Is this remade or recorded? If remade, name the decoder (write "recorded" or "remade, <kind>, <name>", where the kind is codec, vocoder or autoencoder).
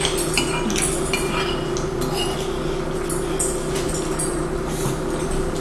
recorded